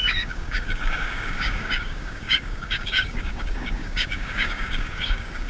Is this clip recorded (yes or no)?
no